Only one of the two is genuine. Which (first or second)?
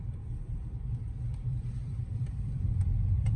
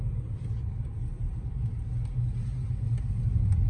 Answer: second